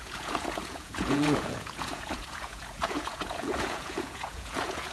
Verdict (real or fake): fake